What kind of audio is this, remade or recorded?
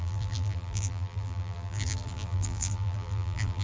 remade